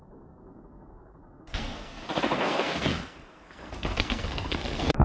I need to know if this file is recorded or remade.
remade